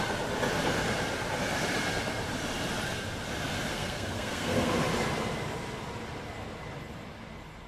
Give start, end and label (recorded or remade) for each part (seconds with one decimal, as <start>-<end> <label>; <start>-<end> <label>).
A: 0.0-3.7 recorded; 3.7-4.7 remade; 4.7-7.7 recorded